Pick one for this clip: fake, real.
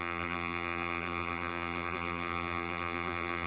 fake